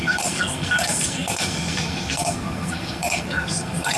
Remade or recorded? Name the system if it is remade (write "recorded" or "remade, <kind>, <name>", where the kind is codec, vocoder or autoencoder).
remade, codec, SNAC